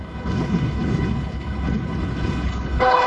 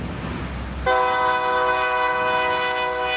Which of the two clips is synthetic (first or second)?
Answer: first